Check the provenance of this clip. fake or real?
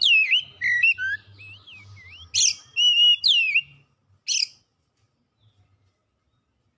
real